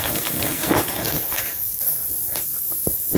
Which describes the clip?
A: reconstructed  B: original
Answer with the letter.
A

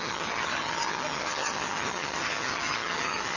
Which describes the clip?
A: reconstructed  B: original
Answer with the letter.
A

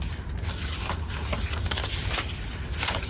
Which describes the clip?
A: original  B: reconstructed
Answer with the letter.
A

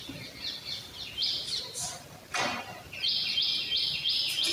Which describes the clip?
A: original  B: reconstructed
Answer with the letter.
A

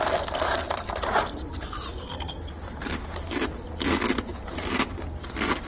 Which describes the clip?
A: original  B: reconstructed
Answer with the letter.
A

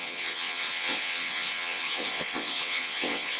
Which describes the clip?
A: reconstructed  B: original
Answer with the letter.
A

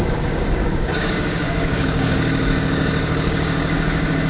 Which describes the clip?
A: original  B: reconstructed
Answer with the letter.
B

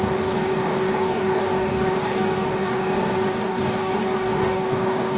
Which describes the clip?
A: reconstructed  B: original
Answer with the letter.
A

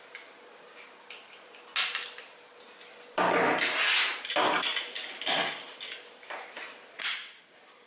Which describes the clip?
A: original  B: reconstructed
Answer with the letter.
A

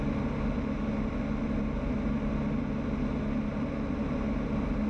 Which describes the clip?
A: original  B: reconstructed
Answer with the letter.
A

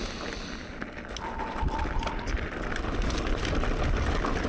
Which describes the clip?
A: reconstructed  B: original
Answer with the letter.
B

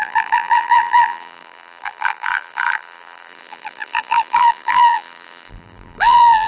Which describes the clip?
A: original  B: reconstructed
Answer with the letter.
B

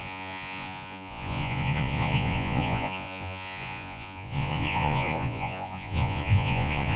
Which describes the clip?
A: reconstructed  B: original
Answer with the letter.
A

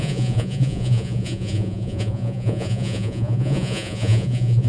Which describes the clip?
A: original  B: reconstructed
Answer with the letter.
B